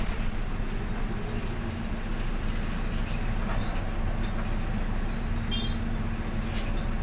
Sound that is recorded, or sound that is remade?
recorded